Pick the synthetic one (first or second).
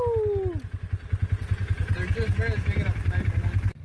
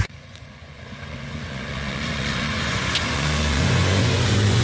second